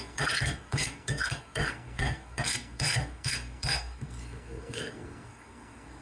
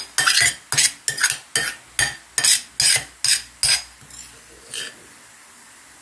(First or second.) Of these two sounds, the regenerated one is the first